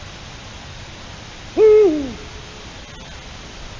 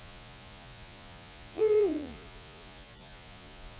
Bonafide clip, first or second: first